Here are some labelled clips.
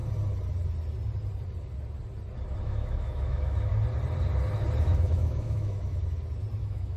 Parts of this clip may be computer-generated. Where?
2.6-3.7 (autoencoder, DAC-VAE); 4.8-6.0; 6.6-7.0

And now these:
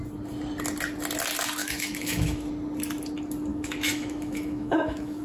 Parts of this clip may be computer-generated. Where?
1.6-2.5 (autoencoder, DAC-VAE); 3.5-5.2

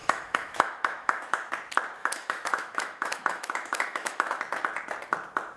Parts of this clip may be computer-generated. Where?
0.0-1.5 (autoencoder, DAC-VAE); 2.0-4.4

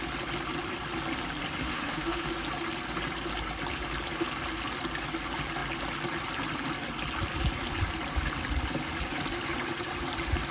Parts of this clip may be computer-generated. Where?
1.6-2.3 (autoencoder, DAC-VAE)